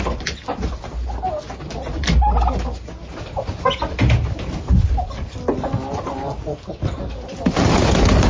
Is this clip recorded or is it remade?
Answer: recorded